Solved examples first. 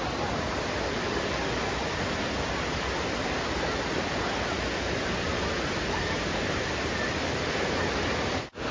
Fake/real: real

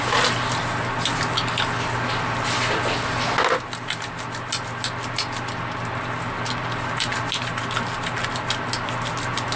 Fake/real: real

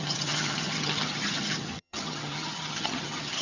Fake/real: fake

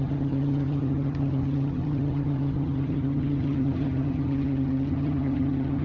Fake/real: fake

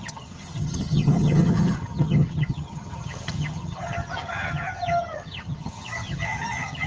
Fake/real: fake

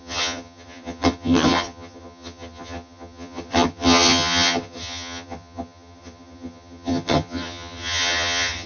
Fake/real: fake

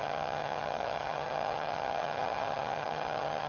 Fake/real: fake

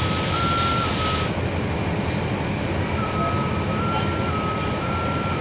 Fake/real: real